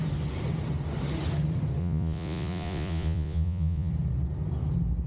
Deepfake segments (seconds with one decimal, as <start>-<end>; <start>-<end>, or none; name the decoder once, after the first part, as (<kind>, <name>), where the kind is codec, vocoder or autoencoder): 1.8-3.9 (vocoder, Vocos)